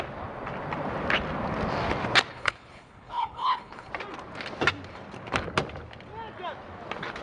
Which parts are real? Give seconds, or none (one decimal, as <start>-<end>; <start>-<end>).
0.0-2.3; 3.9-7.2

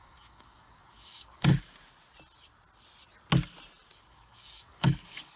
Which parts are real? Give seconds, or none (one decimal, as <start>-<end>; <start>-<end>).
1.5-4.1

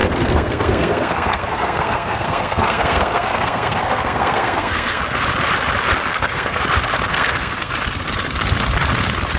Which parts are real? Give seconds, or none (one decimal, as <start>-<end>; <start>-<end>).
5.0-6.1; 6.6-7.1; 7.7-9.4

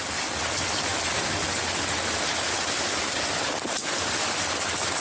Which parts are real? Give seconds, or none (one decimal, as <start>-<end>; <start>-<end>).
0.0-5.0